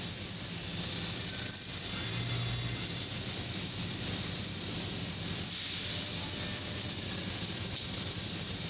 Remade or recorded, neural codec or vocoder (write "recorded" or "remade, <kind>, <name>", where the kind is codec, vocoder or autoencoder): recorded